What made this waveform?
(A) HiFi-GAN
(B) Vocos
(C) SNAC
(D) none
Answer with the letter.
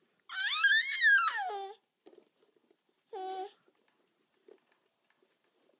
D